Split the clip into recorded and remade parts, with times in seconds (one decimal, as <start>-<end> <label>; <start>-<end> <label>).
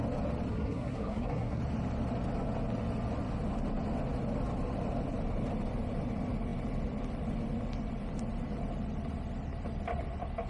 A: 0.0-0.5 recorded; 0.5-1.6 remade; 1.6-10.5 recorded